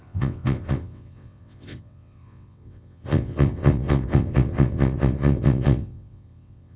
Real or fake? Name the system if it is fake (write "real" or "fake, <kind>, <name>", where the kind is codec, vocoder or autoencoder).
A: fake, vocoder, WaveNeXt